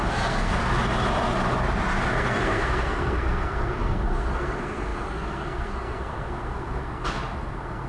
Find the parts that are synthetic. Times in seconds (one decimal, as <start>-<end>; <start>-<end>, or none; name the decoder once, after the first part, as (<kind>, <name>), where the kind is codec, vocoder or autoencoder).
0.0-0.6 (codec, SNAC); 2.1-7.9